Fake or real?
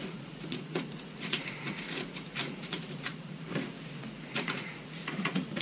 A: fake